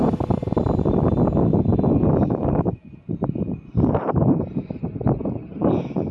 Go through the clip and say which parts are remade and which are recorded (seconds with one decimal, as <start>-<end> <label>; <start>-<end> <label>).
0.0-6.1 recorded